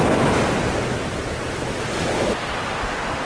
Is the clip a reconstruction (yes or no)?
no